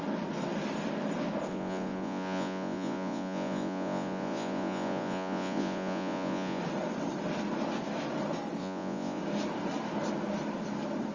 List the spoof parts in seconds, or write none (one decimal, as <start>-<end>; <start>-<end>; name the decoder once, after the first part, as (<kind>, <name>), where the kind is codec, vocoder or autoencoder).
1.5-6.6 (vocoder, Vocos); 8.6-9.2